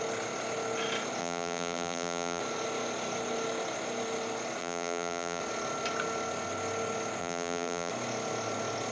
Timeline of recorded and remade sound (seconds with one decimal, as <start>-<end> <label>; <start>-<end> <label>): 0.0-1.2 recorded; 1.2-2.4 remade; 2.4-4.6 recorded; 4.6-5.4 remade; 5.4-7.2 recorded; 7.2-7.9 remade; 7.9-8.9 recorded